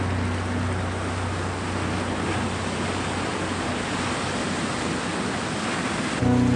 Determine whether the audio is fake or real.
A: real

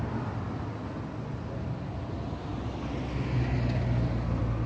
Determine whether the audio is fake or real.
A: real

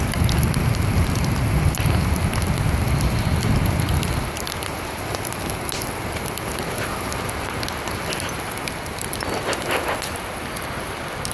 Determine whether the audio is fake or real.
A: real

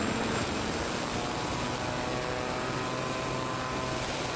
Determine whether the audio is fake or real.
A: real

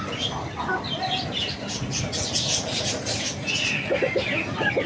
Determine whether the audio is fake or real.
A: real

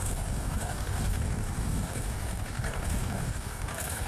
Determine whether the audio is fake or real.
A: fake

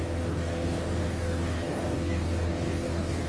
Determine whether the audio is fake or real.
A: fake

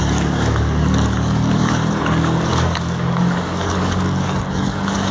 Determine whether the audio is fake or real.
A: fake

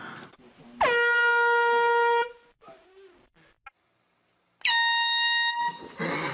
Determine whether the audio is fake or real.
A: real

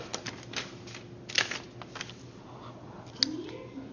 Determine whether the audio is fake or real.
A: real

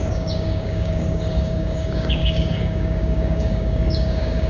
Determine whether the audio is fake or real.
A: fake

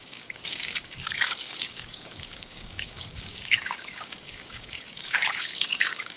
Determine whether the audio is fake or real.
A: fake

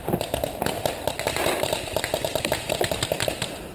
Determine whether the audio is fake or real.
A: real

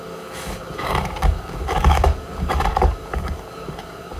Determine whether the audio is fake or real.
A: fake